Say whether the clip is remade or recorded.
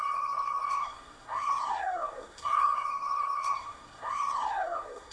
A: remade